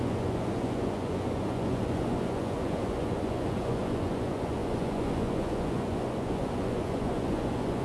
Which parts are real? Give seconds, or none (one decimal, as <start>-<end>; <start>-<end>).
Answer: none